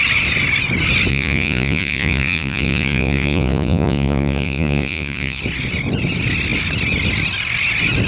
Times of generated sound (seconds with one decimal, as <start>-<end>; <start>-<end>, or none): 1.1-5.4